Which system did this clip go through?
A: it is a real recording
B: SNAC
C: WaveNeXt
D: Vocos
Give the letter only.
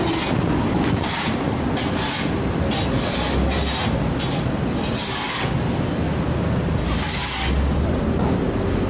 A